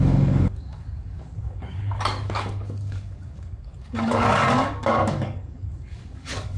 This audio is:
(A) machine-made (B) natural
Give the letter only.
A